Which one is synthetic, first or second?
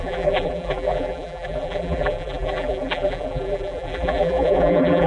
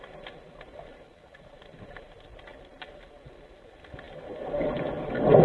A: first